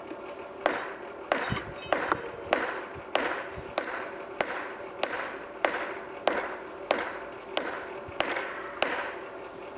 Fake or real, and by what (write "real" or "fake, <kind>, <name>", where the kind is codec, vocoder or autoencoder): real